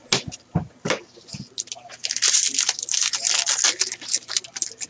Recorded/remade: recorded